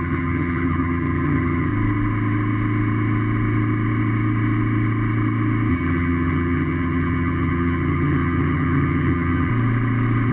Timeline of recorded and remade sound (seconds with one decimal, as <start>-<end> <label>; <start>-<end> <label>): 0.0-1.7 remade; 1.7-5.7 recorded; 5.7-9.5 remade; 9.5-10.3 recorded